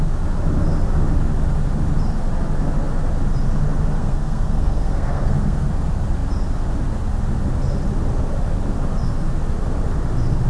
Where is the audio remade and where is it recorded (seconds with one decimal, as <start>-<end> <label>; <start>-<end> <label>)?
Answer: 0.0-4.0 recorded; 4.0-5.7 remade; 5.7-10.5 recorded